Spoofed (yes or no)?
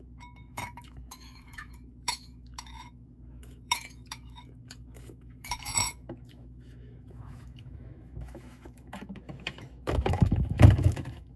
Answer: yes